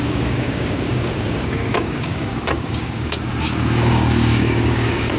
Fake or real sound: fake